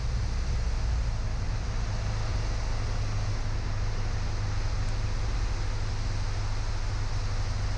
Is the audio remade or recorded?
recorded